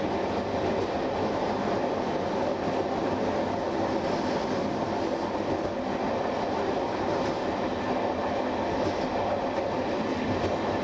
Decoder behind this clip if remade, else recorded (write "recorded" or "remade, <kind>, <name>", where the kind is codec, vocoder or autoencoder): recorded